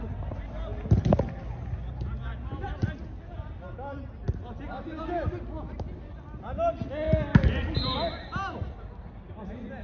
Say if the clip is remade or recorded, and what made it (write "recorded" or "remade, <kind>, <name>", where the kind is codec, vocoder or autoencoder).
recorded